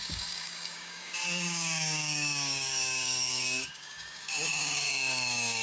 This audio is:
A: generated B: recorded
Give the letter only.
A